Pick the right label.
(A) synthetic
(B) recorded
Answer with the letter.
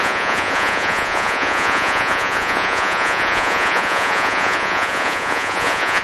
A